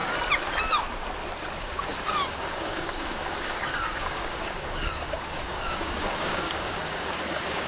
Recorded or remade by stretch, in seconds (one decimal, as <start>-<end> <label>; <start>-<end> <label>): 0.0-1.6 recorded; 1.6-7.7 remade